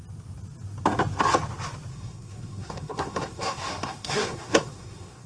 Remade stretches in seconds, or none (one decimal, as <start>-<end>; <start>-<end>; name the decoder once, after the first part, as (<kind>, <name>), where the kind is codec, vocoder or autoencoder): 1.9-5.3 (codec, SNAC)